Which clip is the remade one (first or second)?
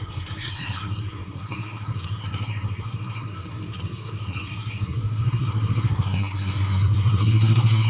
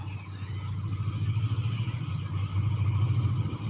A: first